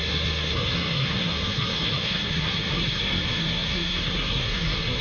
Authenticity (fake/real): fake